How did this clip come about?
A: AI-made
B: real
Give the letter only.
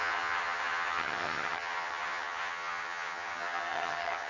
A